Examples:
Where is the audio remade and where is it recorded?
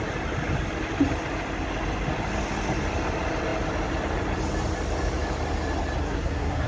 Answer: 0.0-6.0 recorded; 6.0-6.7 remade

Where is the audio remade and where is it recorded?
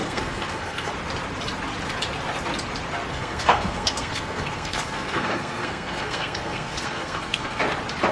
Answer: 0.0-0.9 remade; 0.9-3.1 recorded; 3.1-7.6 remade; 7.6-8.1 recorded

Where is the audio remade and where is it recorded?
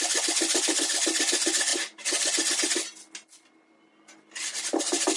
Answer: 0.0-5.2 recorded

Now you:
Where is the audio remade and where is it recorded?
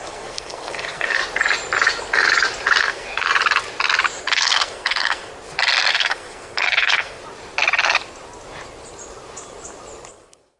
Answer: 0.0-1.2 remade; 1.2-2.8 recorded; 2.8-3.3 remade; 3.3-4.2 recorded; 4.2-5.3 remade; 5.3-5.9 recorded; 5.9-7.2 remade; 7.2-10.1 recorded; 10.1-10.6 remade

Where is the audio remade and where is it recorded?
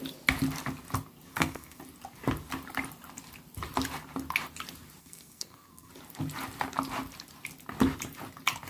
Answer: 0.0-1.3 recorded; 1.3-1.8 remade; 1.8-5.0 recorded; 5.0-5.9 remade; 5.9-8.7 recorded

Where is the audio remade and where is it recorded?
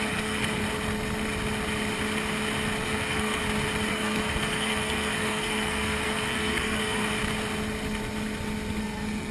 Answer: 0.0-0.6 remade; 0.6-2.8 recorded; 2.8-3.4 remade; 3.4-3.9 recorded; 3.9-7.0 remade; 7.0-8.8 recorded; 8.8-9.3 remade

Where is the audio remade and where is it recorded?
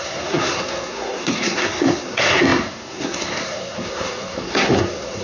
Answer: 0.0-5.2 remade